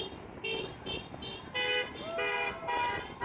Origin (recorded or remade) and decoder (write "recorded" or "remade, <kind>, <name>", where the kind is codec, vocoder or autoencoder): recorded